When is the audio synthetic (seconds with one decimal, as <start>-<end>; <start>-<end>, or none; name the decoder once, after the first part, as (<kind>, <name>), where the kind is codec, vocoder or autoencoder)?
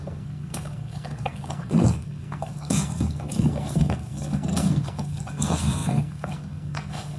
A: 0.0-7.2 (codec, SNAC)